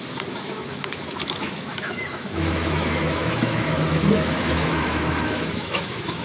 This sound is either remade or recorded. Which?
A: remade